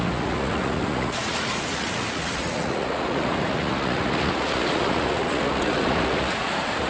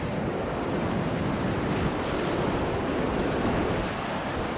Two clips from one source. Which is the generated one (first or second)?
first